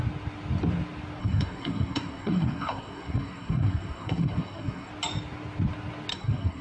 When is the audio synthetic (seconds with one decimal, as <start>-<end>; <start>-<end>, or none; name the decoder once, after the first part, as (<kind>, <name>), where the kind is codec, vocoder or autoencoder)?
1.2-4.9 (codec, SNAC); 6.1-6.6